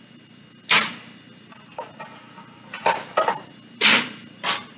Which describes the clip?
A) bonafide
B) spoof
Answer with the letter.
A